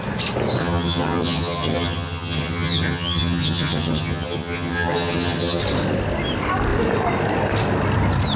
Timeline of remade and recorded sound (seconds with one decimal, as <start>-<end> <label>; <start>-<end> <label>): 0.0-0.6 recorded; 0.6-5.6 remade; 5.6-8.4 recorded